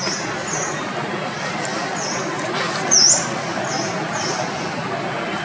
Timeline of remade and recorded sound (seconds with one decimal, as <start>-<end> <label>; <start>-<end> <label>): 0.0-0.4 recorded; 0.4-0.9 remade; 0.9-5.4 recorded